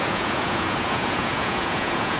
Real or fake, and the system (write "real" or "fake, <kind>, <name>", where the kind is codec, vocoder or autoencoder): fake, vocoder, Vocos